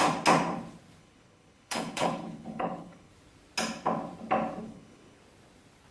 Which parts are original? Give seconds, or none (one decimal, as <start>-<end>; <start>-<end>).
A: 0.0-1.0; 3.1-4.6; 5.2-5.9